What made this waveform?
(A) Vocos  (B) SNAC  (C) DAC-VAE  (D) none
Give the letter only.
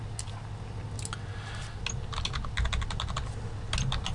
D